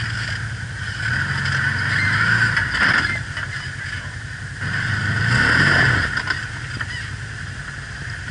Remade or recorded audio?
recorded